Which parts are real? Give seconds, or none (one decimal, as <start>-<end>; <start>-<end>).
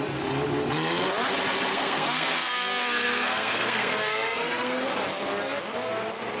0.0-1.7; 4.9-6.4